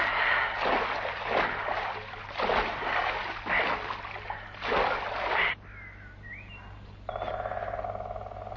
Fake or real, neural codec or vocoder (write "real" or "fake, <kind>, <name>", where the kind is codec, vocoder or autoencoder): real